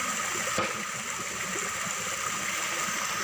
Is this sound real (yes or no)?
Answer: yes